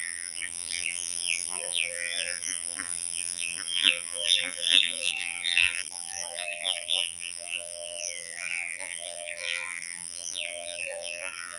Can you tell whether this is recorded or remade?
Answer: remade